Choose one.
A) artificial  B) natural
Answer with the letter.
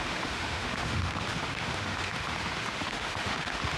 A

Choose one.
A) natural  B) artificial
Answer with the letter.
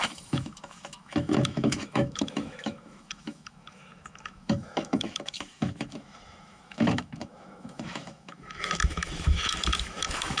B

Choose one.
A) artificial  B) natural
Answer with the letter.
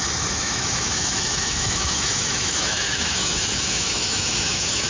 A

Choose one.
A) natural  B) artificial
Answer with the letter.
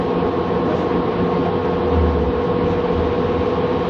A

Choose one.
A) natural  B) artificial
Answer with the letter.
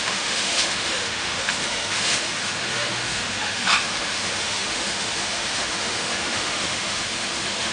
B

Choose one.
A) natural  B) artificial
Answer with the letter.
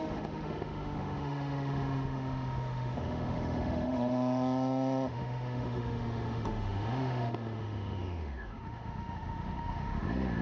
B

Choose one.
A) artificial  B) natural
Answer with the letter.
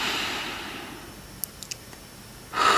B